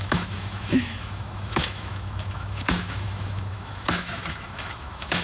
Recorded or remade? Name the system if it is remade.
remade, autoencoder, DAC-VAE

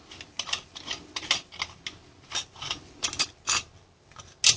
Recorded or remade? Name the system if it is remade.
recorded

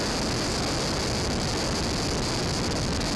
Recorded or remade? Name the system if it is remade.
recorded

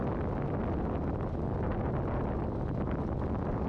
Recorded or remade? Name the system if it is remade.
recorded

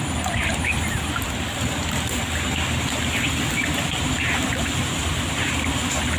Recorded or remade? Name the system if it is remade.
recorded